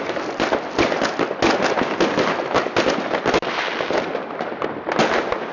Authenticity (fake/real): real